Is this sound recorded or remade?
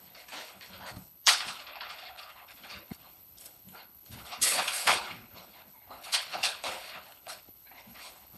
remade